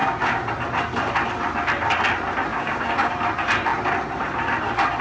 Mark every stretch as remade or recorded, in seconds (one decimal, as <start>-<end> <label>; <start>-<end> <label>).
0.0-0.5 remade; 0.5-2.5 recorded; 2.5-3.1 remade; 3.1-5.0 recorded